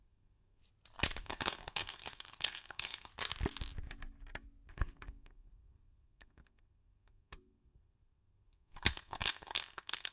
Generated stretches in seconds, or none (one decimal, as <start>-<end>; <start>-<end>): 0.0-0.6; 1.2-3.1; 4.7-10.1